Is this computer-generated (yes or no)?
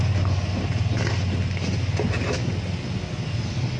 no